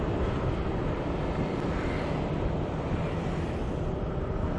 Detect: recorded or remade recorded